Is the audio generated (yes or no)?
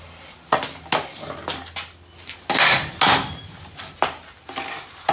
no